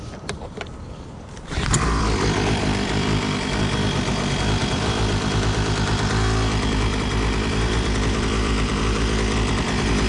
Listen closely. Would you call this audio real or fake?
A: fake